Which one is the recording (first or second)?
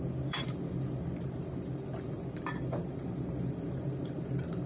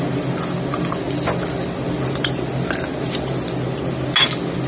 second